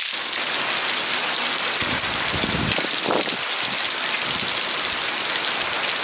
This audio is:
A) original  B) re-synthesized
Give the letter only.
A